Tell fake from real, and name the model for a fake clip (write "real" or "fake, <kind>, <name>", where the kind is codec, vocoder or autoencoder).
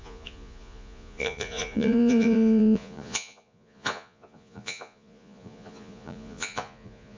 fake, vocoder, Vocos